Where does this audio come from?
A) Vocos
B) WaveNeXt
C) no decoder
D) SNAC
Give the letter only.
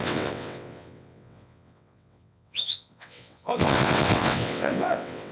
B